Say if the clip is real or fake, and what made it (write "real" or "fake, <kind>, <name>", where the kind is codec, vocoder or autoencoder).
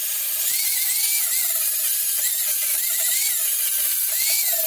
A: real